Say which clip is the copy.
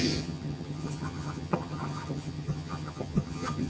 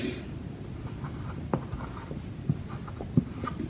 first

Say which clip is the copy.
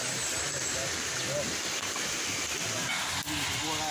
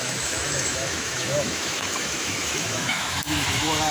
second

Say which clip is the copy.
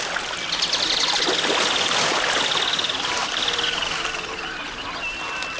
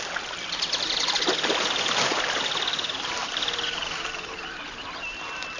second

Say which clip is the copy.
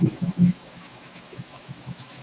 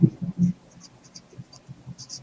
first